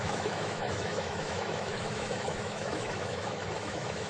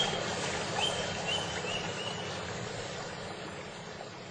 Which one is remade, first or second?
first